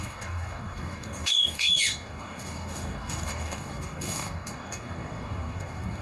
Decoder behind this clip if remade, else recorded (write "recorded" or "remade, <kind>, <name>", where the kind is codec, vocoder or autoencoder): remade, codec, DAC